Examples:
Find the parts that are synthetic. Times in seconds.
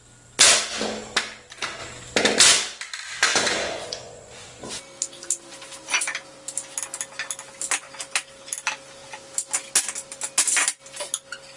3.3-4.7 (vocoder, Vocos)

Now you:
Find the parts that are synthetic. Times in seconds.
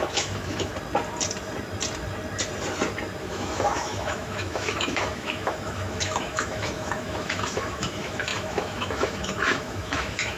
0.0-0.7 (autoencoder, DAC-VAE); 3.2-10.4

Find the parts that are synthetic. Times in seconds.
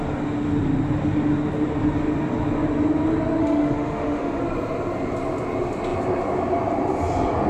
3.4-4.4 (autoencoder, DAC-VAE)